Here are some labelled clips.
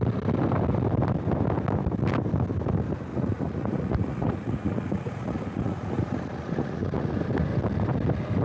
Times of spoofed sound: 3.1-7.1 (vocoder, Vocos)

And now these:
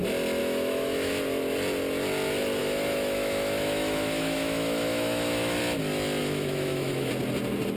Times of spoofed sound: 0.4-1.1 (autoencoder, DAC-VAE); 2.6-5.6; 6.2-7.1

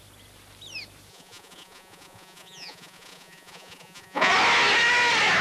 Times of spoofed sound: 1.1-4.3 (vocoder, Vocos)

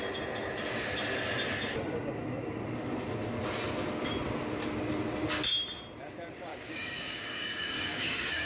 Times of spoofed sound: 6.5-8.5 (codec, DAC)

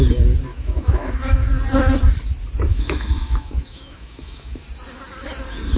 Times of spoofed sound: 0.5-1.5 (autoencoder, DAC-VAE); 2.7-4.6